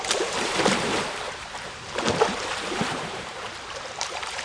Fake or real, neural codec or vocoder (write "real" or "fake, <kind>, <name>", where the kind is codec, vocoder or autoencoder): fake, vocoder, BigVGAN v2